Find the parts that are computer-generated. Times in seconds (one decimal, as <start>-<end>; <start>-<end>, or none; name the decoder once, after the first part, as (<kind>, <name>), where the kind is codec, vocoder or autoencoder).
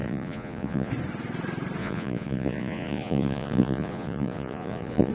0.0-0.9 (vocoder, Vocos); 1.8-5.1